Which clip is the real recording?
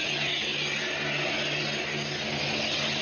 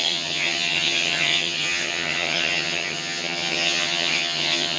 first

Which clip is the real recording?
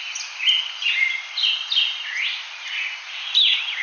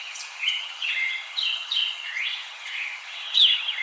first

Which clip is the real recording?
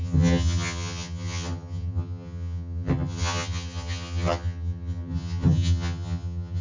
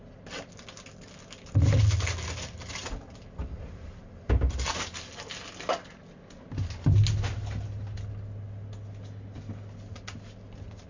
second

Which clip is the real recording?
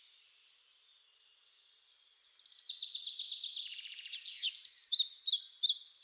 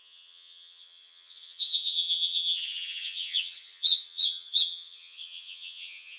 first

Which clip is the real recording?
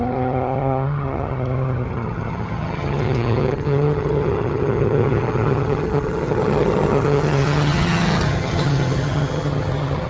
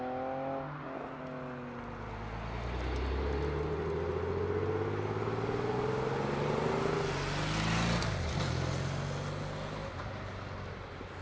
second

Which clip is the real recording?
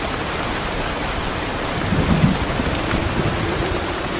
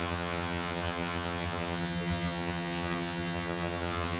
first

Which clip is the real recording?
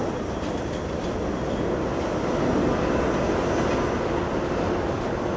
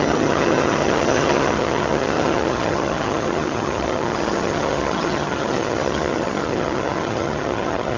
first